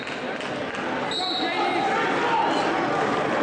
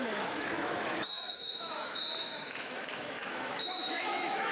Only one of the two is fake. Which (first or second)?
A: second